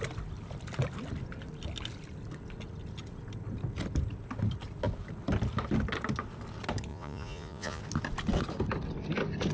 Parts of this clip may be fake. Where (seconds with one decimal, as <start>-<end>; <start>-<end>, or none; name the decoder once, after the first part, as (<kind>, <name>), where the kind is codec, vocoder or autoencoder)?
6.9-7.8 (vocoder, Vocos)